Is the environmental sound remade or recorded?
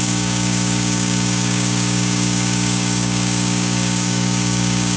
remade